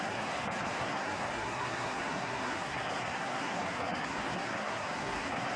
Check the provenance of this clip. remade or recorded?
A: remade